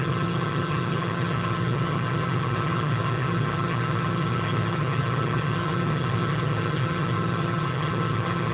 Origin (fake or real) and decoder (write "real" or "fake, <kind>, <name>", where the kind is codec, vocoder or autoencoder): fake, vocoder, HiFi-GAN